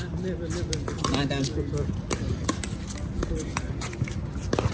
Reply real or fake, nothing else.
real